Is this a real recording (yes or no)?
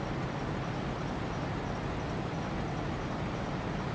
yes